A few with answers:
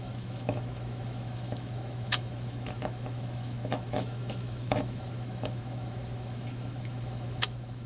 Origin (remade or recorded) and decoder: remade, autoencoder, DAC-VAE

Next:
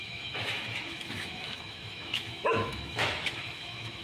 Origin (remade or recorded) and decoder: remade, autoencoder, DAC-VAE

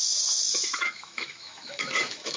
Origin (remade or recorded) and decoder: remade, autoencoder, DAC-VAE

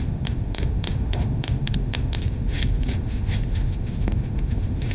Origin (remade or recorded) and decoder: remade, autoencoder, DAC-VAE